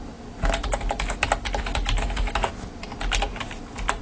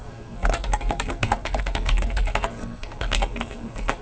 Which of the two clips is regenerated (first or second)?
second